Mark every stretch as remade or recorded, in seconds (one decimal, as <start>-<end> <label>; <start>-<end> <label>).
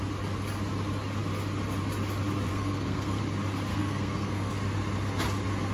0.0-2.5 recorded; 2.5-3.2 remade; 3.2-3.7 recorded; 3.7-4.5 remade; 4.5-5.7 recorded